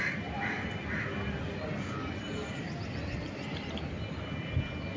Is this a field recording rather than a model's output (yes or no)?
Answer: yes